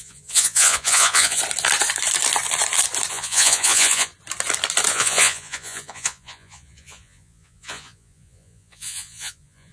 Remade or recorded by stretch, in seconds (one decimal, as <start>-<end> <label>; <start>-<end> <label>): 0.0-1.4 remade; 1.4-3.1 recorded; 3.1-4.1 remade; 4.1-4.9 recorded; 4.9-9.7 remade